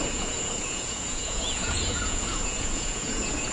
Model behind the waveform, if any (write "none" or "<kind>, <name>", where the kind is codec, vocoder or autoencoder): vocoder, Vocos